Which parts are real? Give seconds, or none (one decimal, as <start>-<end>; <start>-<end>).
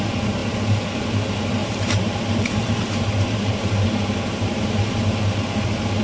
0.0-1.6; 5.2-6.0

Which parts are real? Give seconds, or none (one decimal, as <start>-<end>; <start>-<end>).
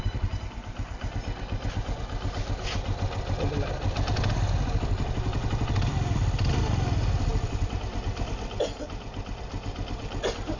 0.0-10.6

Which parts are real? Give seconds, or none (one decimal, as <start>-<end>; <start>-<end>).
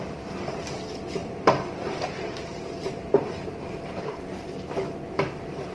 0.0-1.2; 4.5-5.7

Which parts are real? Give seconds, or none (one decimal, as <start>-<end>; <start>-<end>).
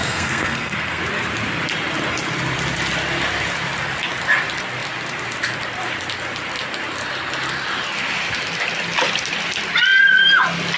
1.0-10.8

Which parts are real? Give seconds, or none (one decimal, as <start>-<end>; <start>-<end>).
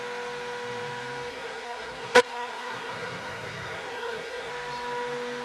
0.0-1.3; 4.5-5.4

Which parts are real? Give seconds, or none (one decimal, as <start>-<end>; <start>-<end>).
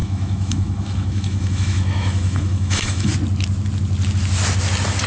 3.1-5.1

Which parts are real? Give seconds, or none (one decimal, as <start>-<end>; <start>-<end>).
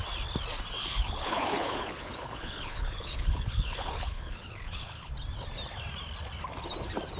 0.0-0.8; 5.1-7.2